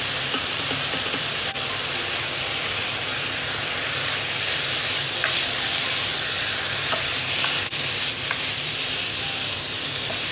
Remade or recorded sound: remade